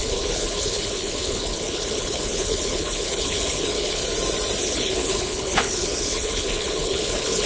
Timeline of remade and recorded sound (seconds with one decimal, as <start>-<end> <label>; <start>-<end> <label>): 0.0-4.0 remade; 4.0-4.6 recorded; 4.6-7.5 remade